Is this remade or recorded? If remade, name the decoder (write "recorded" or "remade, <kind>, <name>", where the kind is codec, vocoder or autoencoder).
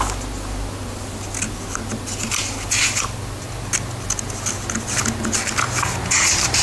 recorded